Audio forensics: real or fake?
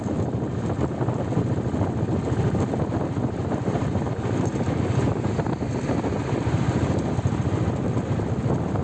real